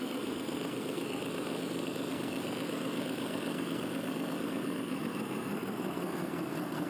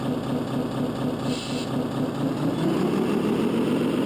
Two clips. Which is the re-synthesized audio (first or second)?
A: first